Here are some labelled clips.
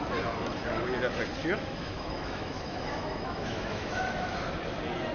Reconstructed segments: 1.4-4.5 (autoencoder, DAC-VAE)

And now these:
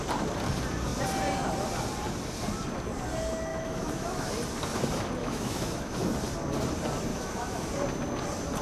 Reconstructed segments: 3.5-4.3 (autoencoder, DAC-VAE); 5.2-6.0; 7.1-7.7

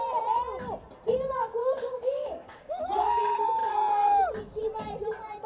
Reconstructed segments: 1.6-2.8 (codec, DAC)

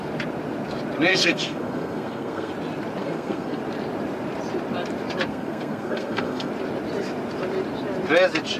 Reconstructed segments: 1.1-2.5 (codec, SNAC); 3.0-3.6; 5.3-6.5

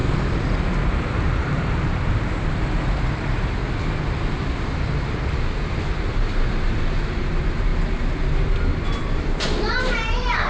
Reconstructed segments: 1.0-3.6 (vocoder, BigVGAN v2); 5.8-7.7; 9.0-10.5

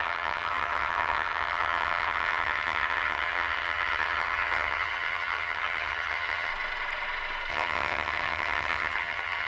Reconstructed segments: 0.0-6.5 (vocoder, HiFi-GAN); 7.5-9.5